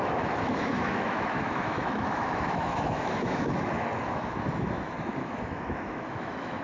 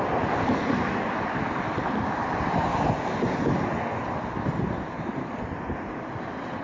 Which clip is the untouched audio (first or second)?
second